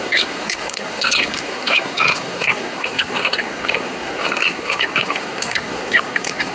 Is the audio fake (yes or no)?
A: yes